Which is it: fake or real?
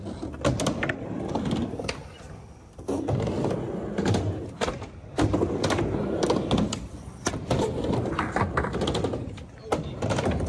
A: real